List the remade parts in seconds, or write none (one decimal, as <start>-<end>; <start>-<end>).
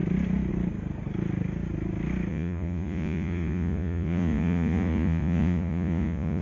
2.3-6.4